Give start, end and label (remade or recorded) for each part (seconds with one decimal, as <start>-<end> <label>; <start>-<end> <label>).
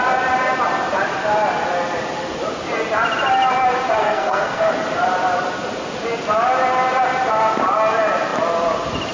0.0-4.0 recorded; 4.0-4.7 remade; 4.7-9.1 recorded